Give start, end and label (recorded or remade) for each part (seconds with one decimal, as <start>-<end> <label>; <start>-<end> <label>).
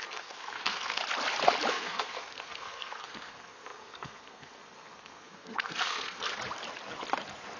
0.0-1.0 remade; 1.0-1.7 recorded; 1.7-6.4 remade; 6.4-7.6 recorded